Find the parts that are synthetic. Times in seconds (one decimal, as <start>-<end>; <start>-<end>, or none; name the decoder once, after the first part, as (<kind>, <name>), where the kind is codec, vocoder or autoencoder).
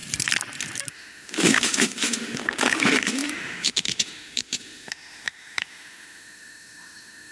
0.9-7.3 (autoencoder, DAC-VAE)